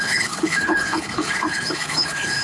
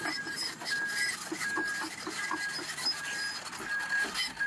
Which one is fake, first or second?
first